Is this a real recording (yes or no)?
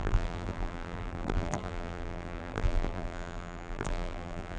no